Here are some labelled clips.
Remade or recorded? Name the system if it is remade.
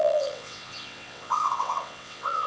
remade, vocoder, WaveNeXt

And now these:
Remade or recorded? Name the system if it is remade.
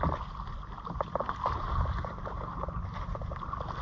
recorded